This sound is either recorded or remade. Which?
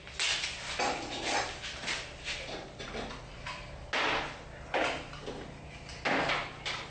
recorded